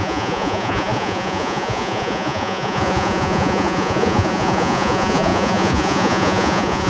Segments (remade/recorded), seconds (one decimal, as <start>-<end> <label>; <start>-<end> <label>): 0.0-6.9 remade